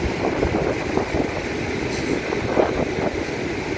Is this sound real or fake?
real